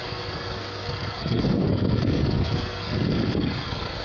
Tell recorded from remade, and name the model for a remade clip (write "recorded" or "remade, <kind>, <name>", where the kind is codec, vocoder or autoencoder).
remade, codec, SNAC